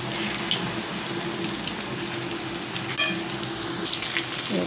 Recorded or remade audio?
recorded